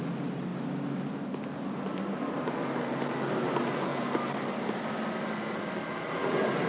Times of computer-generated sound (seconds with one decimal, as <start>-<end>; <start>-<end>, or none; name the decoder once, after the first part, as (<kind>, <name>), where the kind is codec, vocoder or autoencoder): none